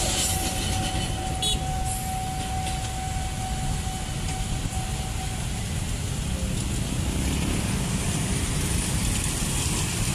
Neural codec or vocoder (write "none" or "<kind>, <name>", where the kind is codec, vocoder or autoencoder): none